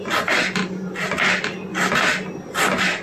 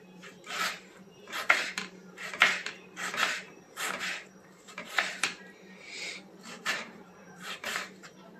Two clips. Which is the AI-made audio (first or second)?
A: second